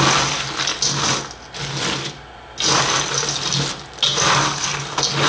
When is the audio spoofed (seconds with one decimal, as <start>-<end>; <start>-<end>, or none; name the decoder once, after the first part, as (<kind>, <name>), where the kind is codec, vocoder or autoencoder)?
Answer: none